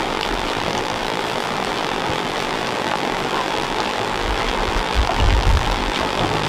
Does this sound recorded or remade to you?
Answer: remade